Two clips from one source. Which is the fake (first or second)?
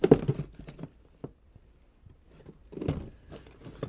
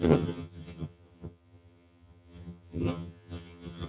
second